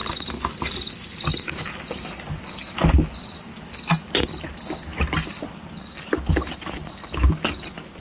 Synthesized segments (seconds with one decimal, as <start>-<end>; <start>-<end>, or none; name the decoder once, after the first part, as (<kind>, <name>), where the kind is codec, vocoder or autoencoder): none